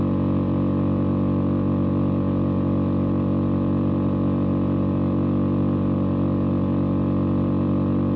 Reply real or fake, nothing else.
real